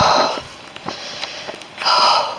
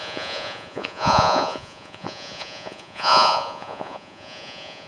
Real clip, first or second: first